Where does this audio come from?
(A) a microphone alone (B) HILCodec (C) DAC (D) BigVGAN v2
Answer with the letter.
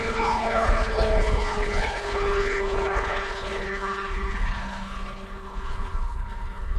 B